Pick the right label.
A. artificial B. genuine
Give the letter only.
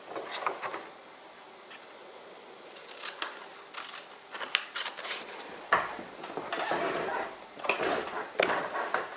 B